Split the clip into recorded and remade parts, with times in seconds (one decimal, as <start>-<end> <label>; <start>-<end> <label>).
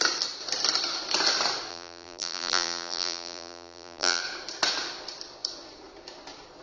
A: 0.0-1.7 recorded; 1.7-4.2 remade; 4.2-6.6 recorded